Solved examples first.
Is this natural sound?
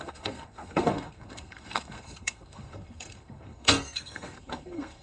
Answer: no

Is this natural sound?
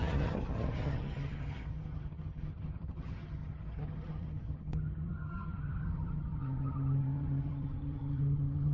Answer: no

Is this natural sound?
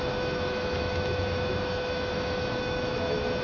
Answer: no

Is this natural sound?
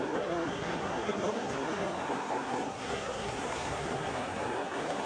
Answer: no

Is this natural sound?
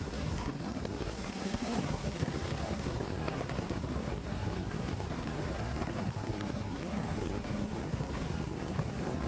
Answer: no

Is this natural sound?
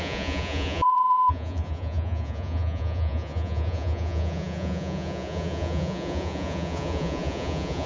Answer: no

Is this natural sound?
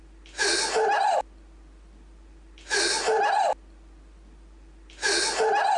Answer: yes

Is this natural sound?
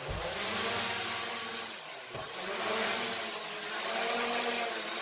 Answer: yes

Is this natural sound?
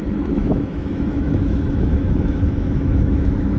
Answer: no